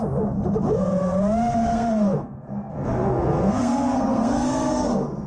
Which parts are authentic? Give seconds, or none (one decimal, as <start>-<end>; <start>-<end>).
0.0-1.7